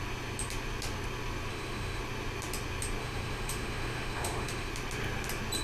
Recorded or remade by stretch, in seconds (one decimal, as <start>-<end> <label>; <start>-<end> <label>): 0.0-1.5 recorded; 1.5-2.0 remade; 2.0-3.0 recorded; 3.0-4.7 remade; 4.7-5.6 recorded